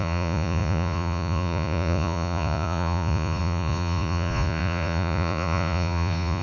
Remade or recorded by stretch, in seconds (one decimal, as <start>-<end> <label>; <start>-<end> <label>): 0.0-6.4 remade